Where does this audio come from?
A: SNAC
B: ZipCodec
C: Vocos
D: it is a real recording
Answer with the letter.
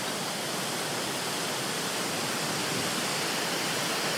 D